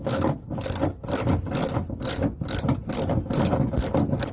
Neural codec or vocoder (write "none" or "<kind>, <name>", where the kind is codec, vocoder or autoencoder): none